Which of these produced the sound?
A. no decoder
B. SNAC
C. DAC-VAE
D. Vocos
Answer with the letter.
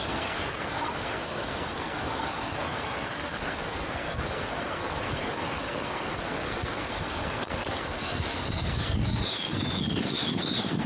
B